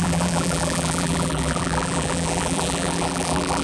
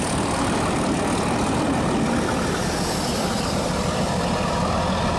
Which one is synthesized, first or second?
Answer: first